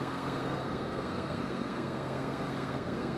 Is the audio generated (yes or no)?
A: yes